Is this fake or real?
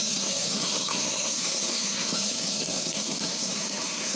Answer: fake